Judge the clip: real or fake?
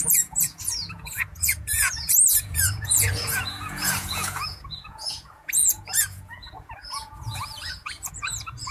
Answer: fake